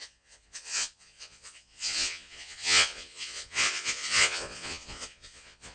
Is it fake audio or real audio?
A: fake